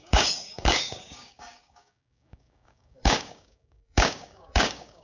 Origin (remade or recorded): remade